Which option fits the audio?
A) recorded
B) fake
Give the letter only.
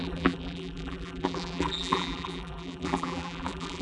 B